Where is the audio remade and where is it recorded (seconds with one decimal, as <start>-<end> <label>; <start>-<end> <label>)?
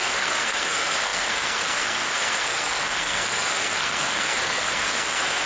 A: 0.0-5.5 remade